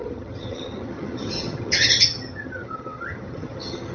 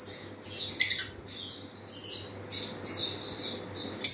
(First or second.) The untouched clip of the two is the second